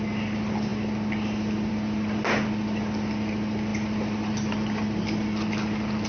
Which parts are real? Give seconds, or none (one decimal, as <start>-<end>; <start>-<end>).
0.0-6.1